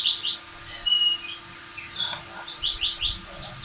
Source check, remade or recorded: recorded